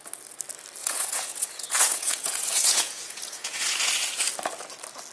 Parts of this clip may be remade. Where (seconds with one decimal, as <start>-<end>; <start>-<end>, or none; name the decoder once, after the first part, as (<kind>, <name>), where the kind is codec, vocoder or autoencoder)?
0.8-3.9 (vocoder, Vocos)